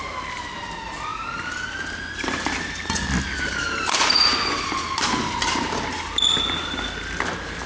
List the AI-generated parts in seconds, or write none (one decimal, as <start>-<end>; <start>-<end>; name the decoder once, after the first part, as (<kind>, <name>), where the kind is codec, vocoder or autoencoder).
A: none